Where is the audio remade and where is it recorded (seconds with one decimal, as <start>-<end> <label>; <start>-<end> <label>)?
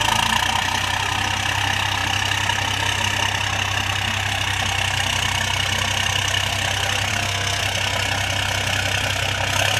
0.0-7.1 recorded; 7.1-7.6 remade; 7.6-9.8 recorded